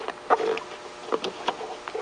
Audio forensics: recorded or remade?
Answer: recorded